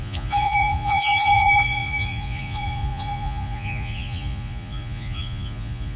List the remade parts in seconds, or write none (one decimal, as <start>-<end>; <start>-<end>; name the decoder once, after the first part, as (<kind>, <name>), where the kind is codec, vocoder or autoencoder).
0.0-6.0 (vocoder, Vocos)